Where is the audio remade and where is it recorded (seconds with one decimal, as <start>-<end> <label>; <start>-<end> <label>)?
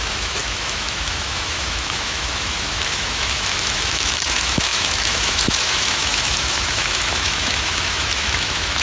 0.0-8.8 remade